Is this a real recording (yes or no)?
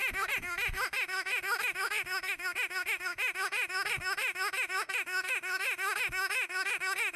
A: no